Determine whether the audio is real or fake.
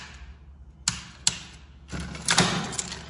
real